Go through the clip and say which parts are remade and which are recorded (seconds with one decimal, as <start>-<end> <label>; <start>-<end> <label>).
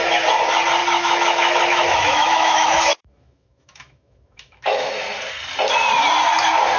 0.0-0.8 recorded; 0.8-4.9 remade; 4.9-6.8 recorded